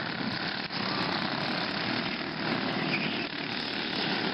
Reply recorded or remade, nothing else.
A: recorded